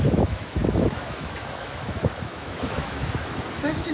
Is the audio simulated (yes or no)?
yes